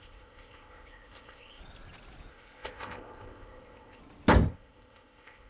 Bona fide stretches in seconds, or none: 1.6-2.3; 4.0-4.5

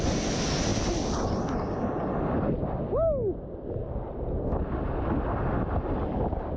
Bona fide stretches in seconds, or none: 0.0-6.6

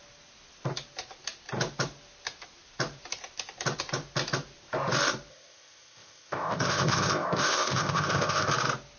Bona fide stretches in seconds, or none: 0.0-5.3; 8.5-9.0

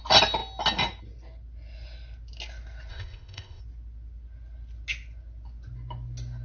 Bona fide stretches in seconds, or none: 0.0-2.9; 3.6-6.4

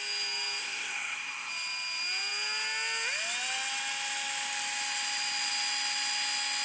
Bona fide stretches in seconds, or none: 0.0-0.6; 1.5-6.6

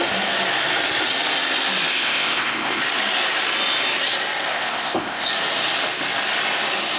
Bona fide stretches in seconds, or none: 0.0-1.9; 2.8-4.5; 5.3-7.0

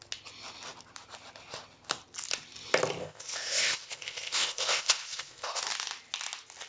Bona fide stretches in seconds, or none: 0.0-3.0; 5.6-6.7